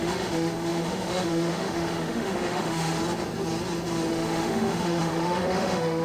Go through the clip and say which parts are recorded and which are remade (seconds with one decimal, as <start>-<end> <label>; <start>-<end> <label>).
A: 0.0-3.0 remade; 3.0-4.1 recorded; 4.1-6.0 remade